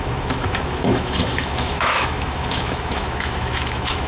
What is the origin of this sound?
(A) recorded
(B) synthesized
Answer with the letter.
B